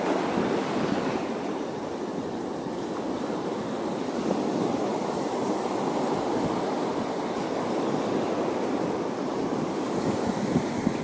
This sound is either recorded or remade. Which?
recorded